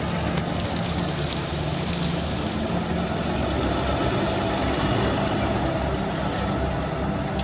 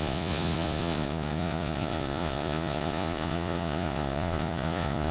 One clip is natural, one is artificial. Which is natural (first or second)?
first